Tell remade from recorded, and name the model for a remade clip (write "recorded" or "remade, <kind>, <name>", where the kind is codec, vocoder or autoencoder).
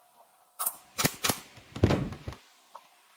remade, vocoder, BigVGAN v2